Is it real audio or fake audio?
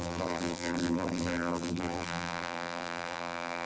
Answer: fake